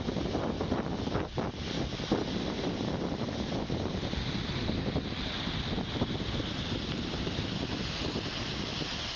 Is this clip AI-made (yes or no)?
no